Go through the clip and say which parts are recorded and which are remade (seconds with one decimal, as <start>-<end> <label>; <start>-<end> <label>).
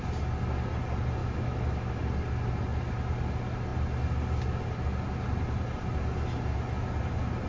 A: 0.0-1.2 recorded; 1.2-2.0 remade; 2.0-7.5 recorded